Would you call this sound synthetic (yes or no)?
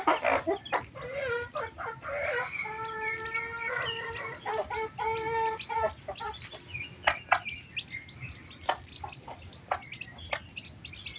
no